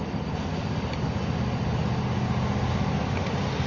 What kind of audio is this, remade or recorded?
recorded